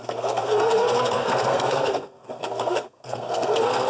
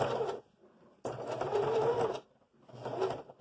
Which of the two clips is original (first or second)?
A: second